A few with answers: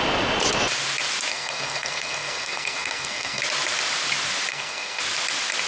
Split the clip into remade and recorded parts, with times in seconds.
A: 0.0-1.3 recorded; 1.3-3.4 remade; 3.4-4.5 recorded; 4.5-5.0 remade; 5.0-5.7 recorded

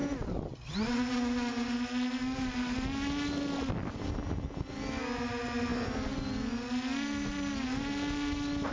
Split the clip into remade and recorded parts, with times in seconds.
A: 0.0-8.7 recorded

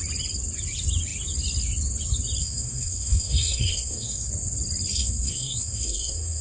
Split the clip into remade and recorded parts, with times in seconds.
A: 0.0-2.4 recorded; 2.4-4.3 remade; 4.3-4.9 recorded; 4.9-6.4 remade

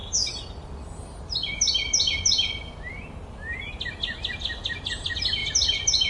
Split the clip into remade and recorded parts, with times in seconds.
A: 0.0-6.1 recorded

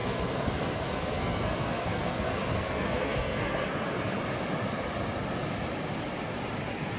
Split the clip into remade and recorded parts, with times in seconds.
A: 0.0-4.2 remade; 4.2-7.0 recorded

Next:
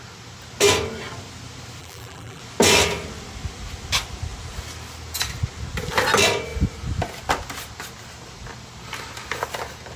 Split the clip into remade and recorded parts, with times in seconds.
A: 0.0-1.8 recorded; 1.8-2.4 remade; 2.4-10.0 recorded

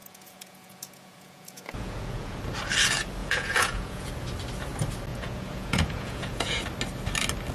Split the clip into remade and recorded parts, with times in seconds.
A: 0.0-2.4 remade; 2.4-3.2 recorded; 3.2-4.1 remade; 4.1-5.1 recorded; 5.1-6.6 remade; 6.6-7.5 recorded

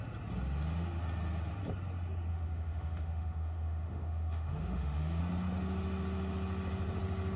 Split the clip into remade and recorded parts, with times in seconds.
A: 0.0-2.3 recorded; 2.3-5.2 remade; 5.2-7.4 recorded